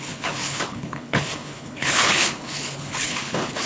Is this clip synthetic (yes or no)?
yes